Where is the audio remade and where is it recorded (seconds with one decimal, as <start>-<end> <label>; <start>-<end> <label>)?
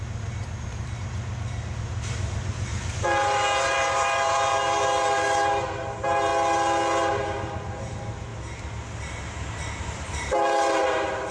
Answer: 0.0-6.3 remade; 6.3-7.1 recorded; 7.1-8.3 remade; 8.3-9.8 recorded; 9.8-11.3 remade